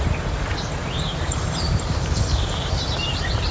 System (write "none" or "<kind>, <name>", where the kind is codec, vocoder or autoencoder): vocoder, BigVGAN v2